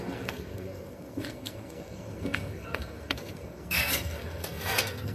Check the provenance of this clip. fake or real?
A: fake